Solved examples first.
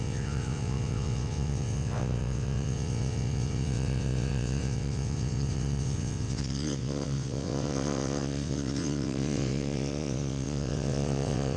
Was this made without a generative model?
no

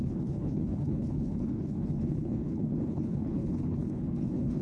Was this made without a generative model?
no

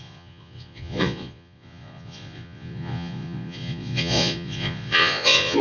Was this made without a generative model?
no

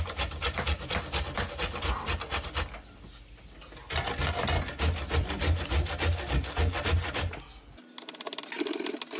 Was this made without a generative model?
yes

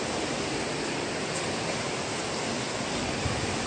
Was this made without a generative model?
yes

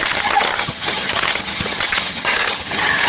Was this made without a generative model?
no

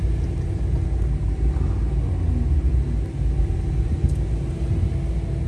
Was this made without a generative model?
yes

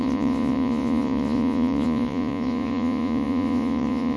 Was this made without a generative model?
no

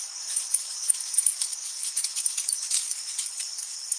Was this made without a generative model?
no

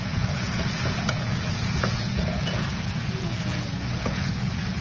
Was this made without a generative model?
no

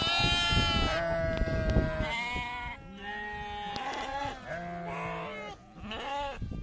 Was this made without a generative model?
yes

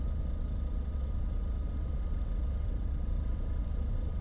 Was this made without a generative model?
no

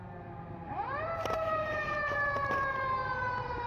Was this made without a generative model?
no